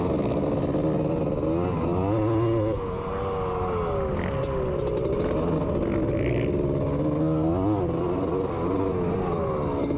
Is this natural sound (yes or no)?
yes